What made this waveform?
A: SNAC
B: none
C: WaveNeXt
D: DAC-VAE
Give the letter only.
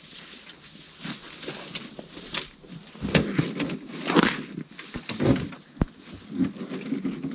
B